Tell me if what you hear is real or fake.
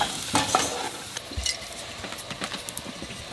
real